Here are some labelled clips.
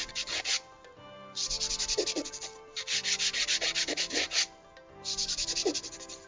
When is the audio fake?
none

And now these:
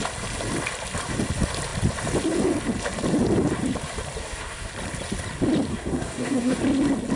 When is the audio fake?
4.2-4.7; 5.7-6.6

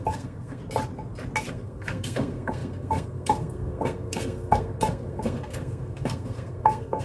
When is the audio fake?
0.0-0.6; 1.5-7.0